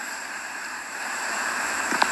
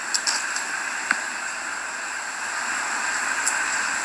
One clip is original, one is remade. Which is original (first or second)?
second